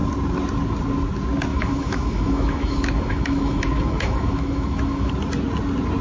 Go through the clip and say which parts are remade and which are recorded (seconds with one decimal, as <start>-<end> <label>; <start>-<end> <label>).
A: 0.0-1.5 recorded; 1.5-5.1 remade; 5.1-6.0 recorded